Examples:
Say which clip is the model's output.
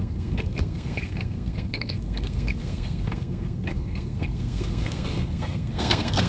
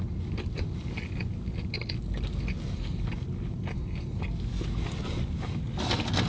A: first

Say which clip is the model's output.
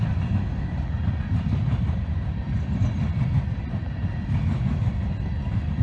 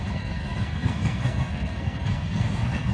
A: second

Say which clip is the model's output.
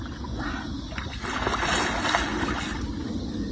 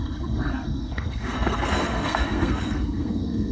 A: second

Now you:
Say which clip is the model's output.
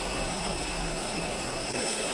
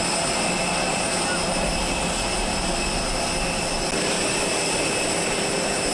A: first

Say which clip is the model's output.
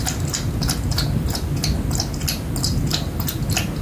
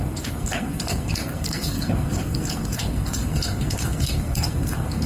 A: second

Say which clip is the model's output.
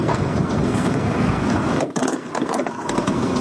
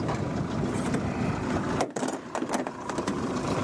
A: first